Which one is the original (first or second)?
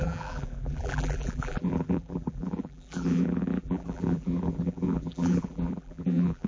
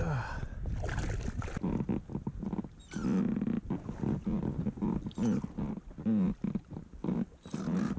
second